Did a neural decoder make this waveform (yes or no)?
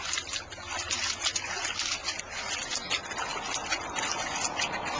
no